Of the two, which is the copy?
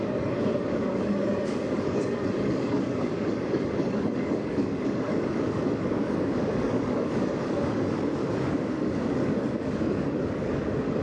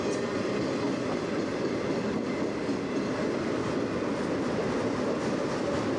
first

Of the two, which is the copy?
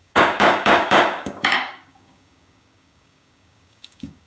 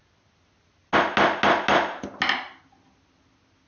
first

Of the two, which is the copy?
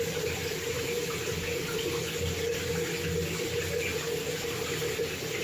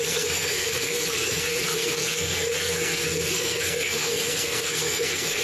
second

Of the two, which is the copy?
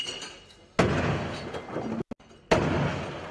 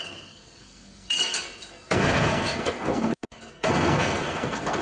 second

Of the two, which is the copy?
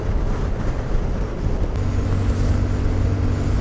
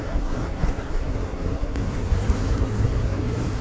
second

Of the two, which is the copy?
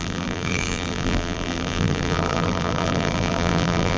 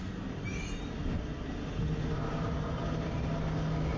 first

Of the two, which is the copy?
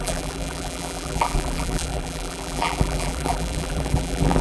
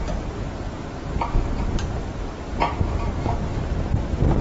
first